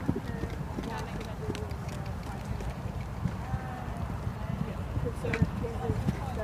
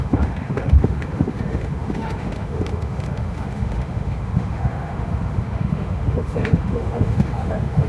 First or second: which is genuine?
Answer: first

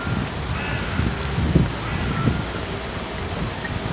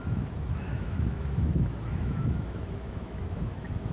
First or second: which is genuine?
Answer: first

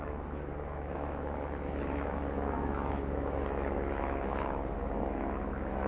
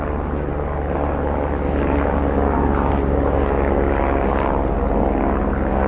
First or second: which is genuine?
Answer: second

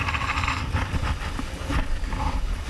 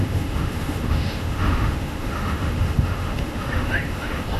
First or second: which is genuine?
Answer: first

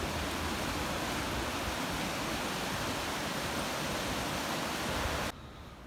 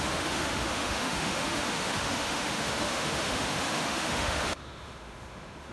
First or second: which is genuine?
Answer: first